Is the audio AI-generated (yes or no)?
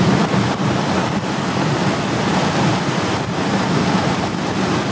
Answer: no